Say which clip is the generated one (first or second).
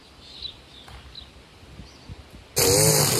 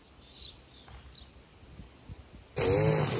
first